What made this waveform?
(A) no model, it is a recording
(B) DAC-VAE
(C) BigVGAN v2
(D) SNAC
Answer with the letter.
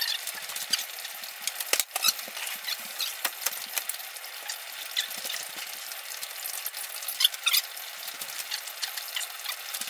A